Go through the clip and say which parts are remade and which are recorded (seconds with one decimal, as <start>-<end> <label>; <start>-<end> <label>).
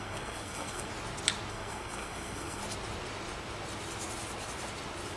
0.0-0.9 remade; 0.9-1.5 recorded; 1.5-2.6 remade; 2.6-5.2 recorded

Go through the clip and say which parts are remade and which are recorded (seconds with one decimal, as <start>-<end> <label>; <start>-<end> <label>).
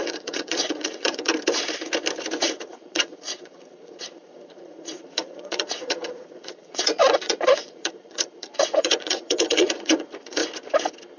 0.0-1.3 remade; 1.3-2.4 recorded; 2.4-10.4 remade; 10.4-11.2 recorded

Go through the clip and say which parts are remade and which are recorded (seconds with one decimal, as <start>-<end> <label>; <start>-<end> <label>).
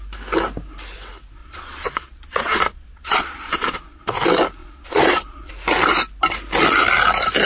0.0-1.4 recorded; 1.4-4.0 remade; 4.0-4.6 recorded; 4.6-5.5 remade; 5.5-7.5 recorded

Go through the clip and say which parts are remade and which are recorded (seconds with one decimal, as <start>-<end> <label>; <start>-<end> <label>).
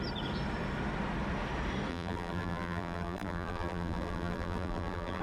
0.0-1.9 recorded; 1.9-5.2 remade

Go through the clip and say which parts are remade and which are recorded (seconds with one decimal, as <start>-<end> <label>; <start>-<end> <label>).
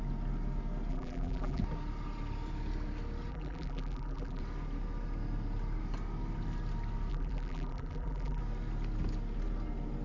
0.0-0.9 recorded; 0.9-1.6 remade; 1.6-3.3 recorded; 3.3-4.4 remade; 4.4-7.1 recorded; 7.1-8.4 remade; 8.4-10.0 recorded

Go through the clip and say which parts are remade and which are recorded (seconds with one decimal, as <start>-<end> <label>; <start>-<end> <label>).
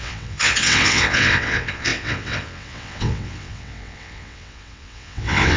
0.0-5.6 remade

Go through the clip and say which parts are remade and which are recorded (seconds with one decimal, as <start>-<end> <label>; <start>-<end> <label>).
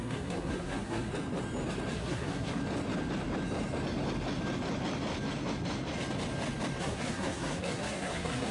0.0-1.1 remade; 1.1-1.9 recorded; 1.9-2.6 remade; 2.6-6.8 recorded; 6.8-8.5 remade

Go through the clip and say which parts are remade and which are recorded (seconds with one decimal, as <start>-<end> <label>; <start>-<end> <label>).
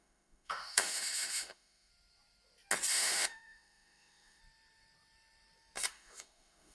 0.0-1.9 remade; 1.9-2.9 recorded; 2.9-4.4 remade; 4.4-5.9 recorded; 5.9-6.7 remade